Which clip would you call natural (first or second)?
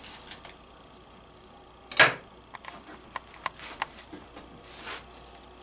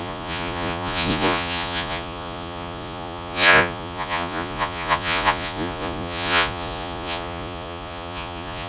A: first